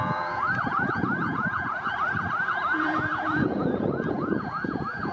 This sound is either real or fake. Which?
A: fake